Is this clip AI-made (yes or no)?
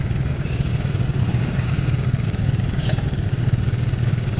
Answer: yes